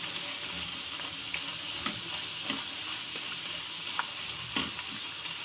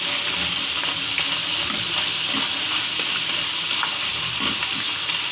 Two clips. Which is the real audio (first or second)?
first